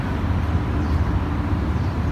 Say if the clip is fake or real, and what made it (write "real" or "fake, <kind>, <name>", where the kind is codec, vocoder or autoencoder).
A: real